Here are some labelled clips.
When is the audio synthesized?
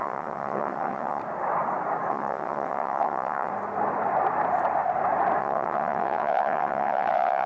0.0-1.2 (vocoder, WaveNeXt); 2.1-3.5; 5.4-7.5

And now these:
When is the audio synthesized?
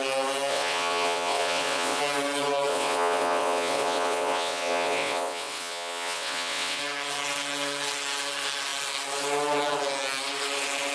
0.5-2.0 (vocoder, WaveNeXt); 2.7-6.8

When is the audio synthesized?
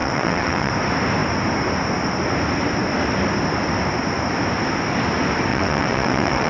0.0-0.7 (vocoder, WaveNeXt); 5.5-6.5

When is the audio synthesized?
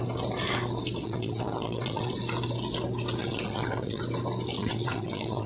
1.0-2.1 (vocoder, WaveNeXt); 3.2-4.0; 4.6-5.5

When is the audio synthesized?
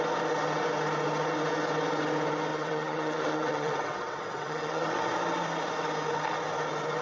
2.5-5.1 (vocoder, WaveNeXt)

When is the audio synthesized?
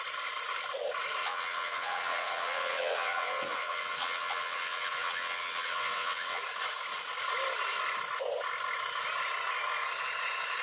1.2-6.4 (vocoder, WaveNeXt)